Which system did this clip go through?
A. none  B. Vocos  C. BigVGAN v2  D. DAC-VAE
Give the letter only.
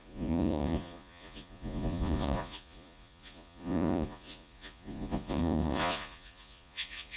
B